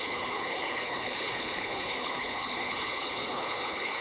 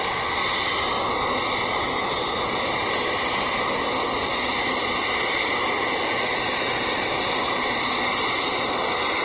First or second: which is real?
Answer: second